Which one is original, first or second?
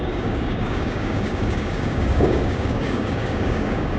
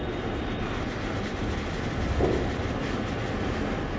second